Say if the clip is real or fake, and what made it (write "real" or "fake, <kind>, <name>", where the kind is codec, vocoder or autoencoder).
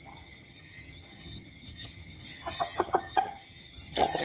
fake, vocoder, HiFi-GAN